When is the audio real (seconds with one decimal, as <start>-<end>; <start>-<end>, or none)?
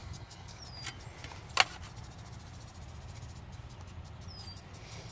0.6-5.1